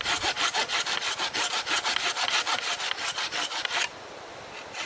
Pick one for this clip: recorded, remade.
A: recorded